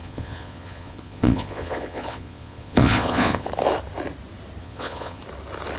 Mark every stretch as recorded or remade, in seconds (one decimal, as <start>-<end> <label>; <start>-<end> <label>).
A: 0.0-3.5 remade; 3.5-4.6 recorded; 4.6-5.2 remade; 5.2-5.8 recorded